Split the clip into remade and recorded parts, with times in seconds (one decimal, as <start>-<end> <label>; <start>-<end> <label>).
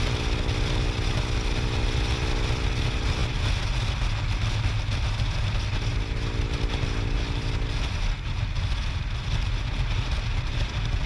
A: 0.0-11.1 recorded